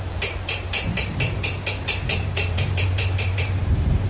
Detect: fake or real fake